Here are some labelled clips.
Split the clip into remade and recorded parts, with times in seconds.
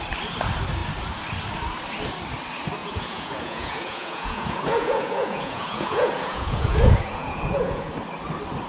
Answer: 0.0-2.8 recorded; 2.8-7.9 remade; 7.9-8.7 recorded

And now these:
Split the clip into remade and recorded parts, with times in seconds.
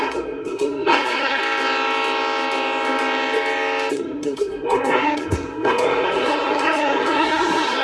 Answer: 0.0-1.4 remade; 1.4-3.9 recorded; 3.9-7.8 remade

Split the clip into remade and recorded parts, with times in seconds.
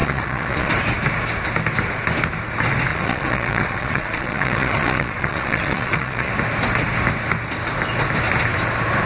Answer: 0.0-0.7 remade; 0.7-2.9 recorded; 2.9-6.3 remade; 6.3-9.1 recorded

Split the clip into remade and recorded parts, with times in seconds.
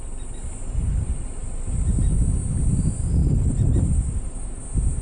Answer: 0.0-3.2 recorded; 3.2-4.6 remade; 4.6-5.0 recorded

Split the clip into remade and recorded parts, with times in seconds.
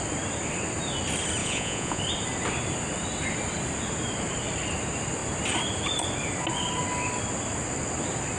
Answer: 0.0-1.4 recorded; 1.4-2.0 remade; 2.0-8.4 recorded